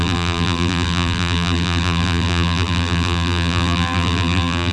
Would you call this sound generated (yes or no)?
yes